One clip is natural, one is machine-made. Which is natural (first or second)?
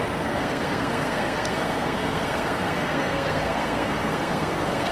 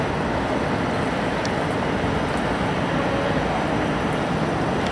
second